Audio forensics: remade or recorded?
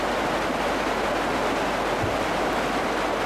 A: recorded